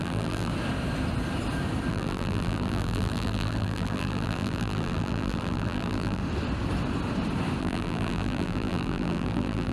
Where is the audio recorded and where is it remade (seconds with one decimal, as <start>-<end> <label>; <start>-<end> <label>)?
0.0-0.5 remade; 0.5-1.9 recorded; 1.9-6.2 remade; 6.2-7.6 recorded; 7.6-9.7 remade